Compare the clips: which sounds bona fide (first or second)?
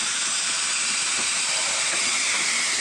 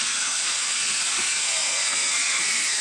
first